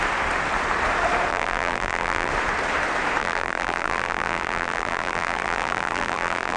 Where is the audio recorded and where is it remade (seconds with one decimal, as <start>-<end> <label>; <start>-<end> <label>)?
0.0-1.3 recorded; 1.3-2.3 remade; 2.3-3.2 recorded; 3.2-6.6 remade